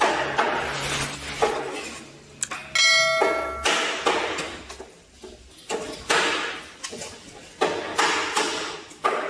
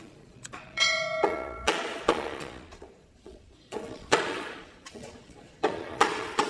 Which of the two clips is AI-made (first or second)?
second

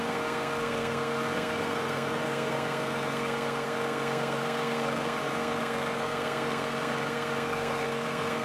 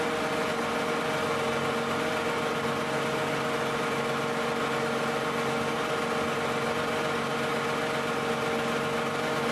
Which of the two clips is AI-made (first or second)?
first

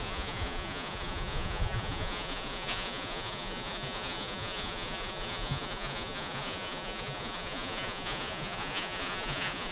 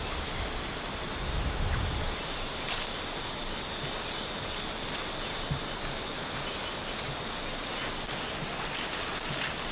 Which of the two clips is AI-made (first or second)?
first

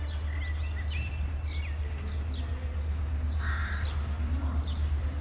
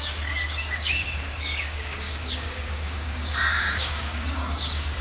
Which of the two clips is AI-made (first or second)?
second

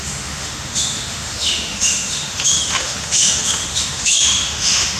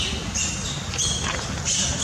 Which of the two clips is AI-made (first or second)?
first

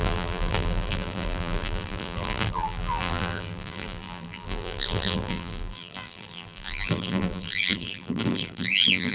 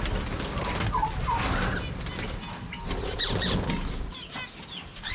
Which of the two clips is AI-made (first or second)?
first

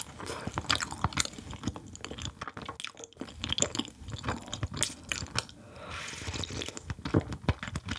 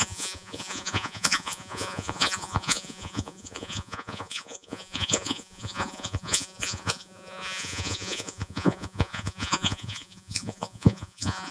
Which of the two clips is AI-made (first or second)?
second